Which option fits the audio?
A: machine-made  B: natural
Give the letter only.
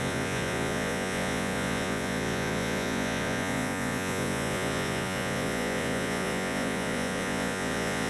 A